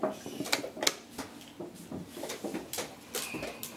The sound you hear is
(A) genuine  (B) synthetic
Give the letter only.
A